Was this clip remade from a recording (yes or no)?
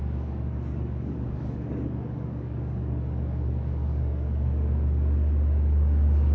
yes